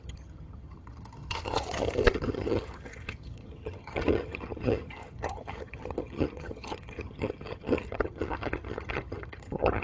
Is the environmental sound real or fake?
fake